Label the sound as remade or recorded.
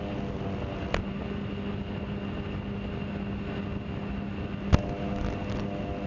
recorded